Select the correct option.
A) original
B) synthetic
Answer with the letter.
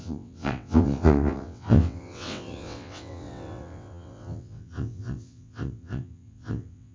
B